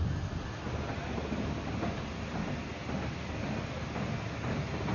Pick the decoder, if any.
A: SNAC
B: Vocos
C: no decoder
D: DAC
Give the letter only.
C